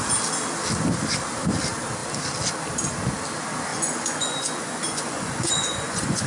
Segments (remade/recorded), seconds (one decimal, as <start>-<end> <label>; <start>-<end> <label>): 0.0-3.7 recorded; 3.7-6.3 remade